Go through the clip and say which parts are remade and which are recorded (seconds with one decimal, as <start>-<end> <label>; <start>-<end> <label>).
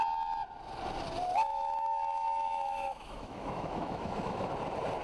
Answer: 0.0-1.5 recorded; 1.5-4.5 remade; 4.5-5.0 recorded